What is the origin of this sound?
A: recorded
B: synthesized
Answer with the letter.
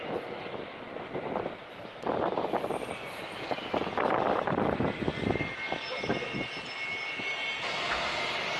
A